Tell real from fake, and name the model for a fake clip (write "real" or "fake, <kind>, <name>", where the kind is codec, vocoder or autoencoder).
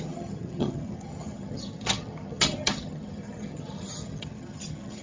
fake, vocoder, HiFi-GAN